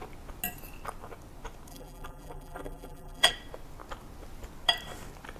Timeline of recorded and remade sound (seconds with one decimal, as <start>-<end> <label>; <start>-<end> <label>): 0.0-1.7 recorded; 1.7-3.3 remade; 3.3-5.4 recorded